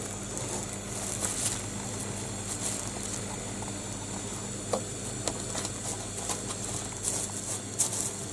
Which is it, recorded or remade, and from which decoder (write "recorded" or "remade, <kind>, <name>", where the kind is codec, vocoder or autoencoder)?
recorded